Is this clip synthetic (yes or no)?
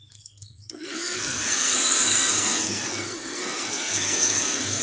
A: yes